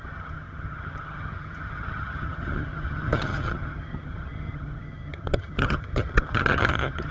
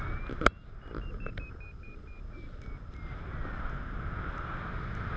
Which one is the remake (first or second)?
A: first